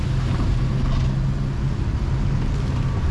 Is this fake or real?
real